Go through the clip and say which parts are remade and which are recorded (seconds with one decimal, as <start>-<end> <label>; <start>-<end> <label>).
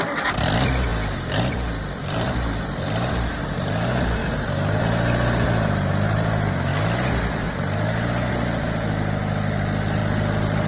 0.0-0.9 recorded; 0.9-3.1 remade; 3.1-10.7 recorded